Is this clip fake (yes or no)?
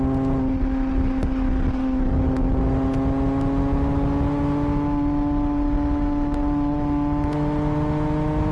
no